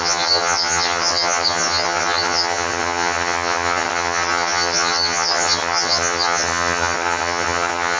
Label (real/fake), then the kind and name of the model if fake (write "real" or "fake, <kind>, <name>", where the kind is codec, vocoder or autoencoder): fake, vocoder, HiFi-GAN